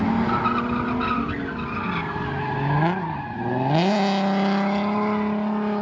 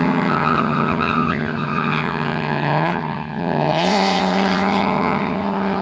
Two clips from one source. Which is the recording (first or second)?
first